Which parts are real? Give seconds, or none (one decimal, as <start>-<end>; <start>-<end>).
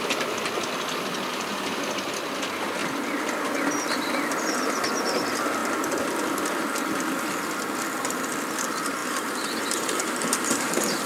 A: 0.0-1.3; 1.8-9.0